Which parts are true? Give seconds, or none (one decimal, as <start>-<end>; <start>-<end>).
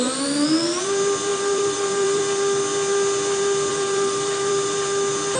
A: 0.0-1.3; 2.2-3.7; 4.5-5.4